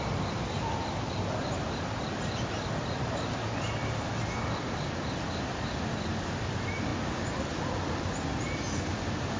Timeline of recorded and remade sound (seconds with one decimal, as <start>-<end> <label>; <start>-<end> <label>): 0.0-9.4 recorded